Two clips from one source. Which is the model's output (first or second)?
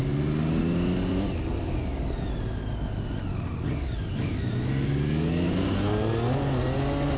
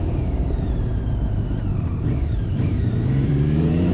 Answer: second